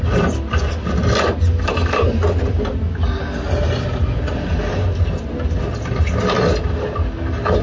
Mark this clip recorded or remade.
recorded